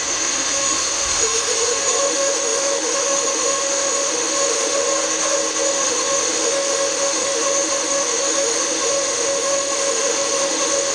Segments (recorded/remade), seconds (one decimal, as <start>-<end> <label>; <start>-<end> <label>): 0.0-1.5 remade; 1.5-2.0 recorded; 2.0-4.9 remade; 4.9-5.7 recorded; 5.7-10.9 remade